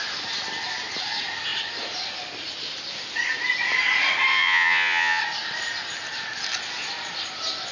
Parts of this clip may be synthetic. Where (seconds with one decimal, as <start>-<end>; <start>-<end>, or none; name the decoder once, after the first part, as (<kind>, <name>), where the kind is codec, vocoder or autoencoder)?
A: 4.3-5.2 (vocoder, Vocos)